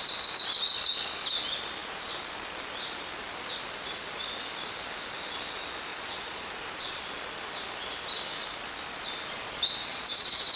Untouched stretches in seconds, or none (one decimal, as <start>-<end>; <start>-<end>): 0.0-5.9; 7.0-9.9